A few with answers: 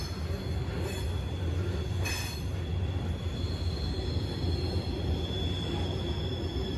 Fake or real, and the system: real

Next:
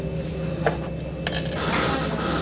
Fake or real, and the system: real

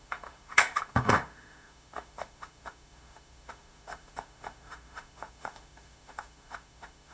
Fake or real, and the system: fake, autoencoder, DAC-VAE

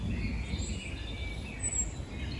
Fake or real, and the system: real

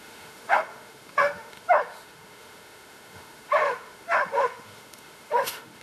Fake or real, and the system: fake, autoencoder, DAC-VAE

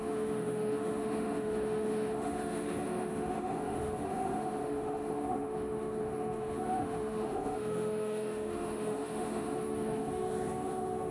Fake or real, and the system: fake, autoencoder, DAC-VAE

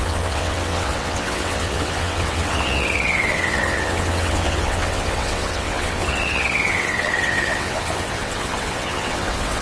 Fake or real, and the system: fake, vocoder, WaveNeXt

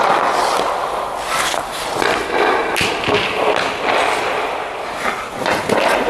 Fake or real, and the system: real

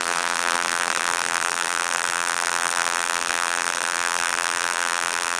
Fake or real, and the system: fake, vocoder, BigVGAN v2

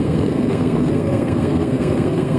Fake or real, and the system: fake, codec, SNAC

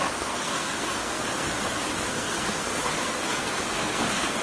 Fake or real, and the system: fake, codec, SNAC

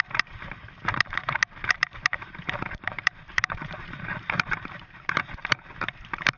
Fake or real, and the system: fake, vocoder, BigVGAN v2